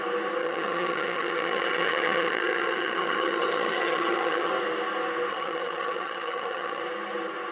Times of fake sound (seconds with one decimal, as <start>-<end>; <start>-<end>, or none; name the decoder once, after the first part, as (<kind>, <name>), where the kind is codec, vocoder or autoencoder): 0.4-4.5 (vocoder, HiFi-GAN); 5.3-6.8